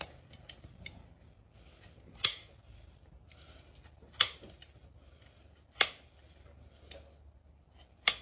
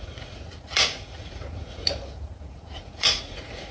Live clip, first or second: first